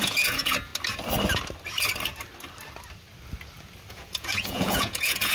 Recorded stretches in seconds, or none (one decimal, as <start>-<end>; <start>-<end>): 0.7-3.9